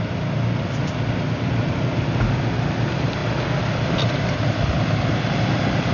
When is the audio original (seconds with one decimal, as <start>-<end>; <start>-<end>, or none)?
0.0-5.9